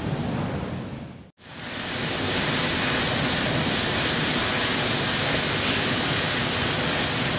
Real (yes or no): yes